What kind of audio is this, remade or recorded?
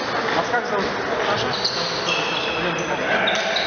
recorded